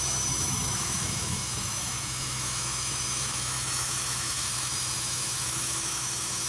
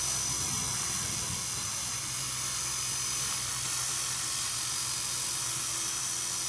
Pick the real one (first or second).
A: second